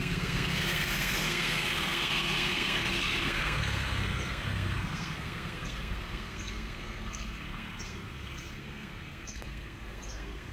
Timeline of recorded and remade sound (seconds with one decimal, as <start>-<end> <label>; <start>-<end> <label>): 0.0-10.5 remade